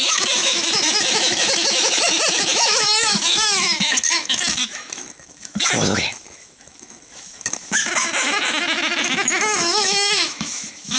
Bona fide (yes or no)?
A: no